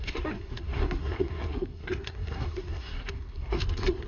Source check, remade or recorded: remade